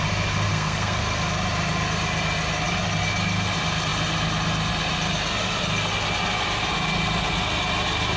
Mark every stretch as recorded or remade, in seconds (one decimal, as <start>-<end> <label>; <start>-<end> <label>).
0.0-0.5 recorded; 0.5-1.0 remade; 1.0-8.2 recorded